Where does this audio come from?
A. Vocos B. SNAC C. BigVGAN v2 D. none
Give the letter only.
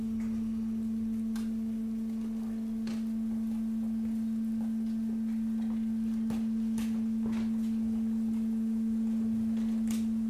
D